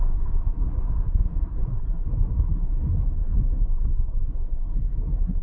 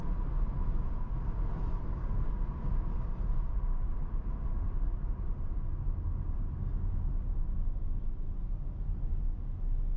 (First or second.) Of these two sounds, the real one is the second